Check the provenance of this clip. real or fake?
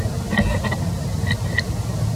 real